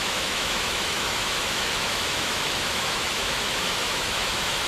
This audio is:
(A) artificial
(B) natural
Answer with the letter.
A